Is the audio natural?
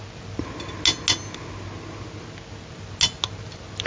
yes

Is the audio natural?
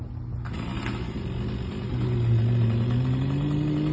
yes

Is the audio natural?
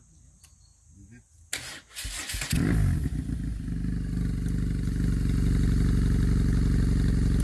yes